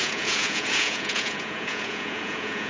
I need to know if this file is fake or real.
fake